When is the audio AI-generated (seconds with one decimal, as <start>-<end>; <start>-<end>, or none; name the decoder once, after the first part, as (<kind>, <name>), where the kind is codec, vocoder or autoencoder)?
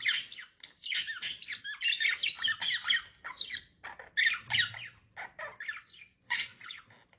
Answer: 6.1-6.8 (vocoder, Vocos)